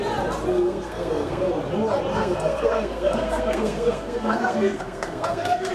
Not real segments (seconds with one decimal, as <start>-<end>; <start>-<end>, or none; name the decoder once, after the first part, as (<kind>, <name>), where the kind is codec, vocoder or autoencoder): 0.5-1.5 (codec, SNAC); 2.1-5.7

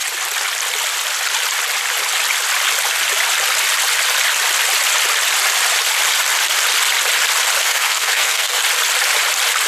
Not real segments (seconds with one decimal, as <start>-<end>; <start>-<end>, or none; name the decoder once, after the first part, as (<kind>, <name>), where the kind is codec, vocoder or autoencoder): 7.6-8.6 (codec, SNAC)